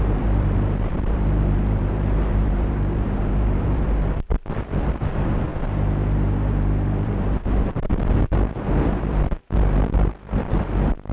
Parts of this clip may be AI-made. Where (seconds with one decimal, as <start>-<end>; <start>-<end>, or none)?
0.0-11.1